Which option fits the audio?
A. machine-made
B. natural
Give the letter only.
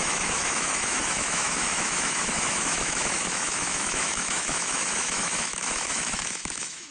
A